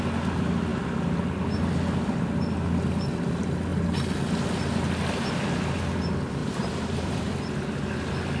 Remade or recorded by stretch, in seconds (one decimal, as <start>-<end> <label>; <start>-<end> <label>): 0.0-6.4 recorded; 6.4-7.3 remade; 7.3-8.4 recorded